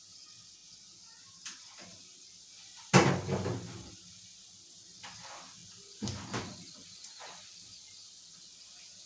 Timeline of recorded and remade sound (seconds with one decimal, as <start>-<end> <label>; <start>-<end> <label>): 0.0-9.1 recorded